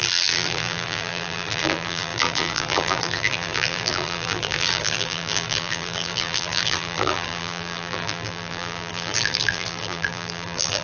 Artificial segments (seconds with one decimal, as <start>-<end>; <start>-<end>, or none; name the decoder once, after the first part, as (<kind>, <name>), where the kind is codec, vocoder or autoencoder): 0.0-10.8 (vocoder, BigVGAN v2)